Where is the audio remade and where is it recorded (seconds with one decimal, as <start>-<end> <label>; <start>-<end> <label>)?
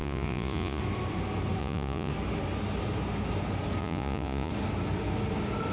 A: 0.0-0.8 remade; 0.8-1.6 recorded; 1.6-2.1 remade; 2.1-3.8 recorded; 3.8-4.5 remade; 4.5-5.7 recorded